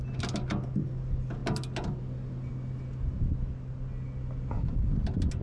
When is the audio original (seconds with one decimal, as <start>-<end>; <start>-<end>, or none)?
0.0-5.4